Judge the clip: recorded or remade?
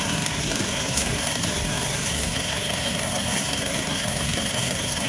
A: remade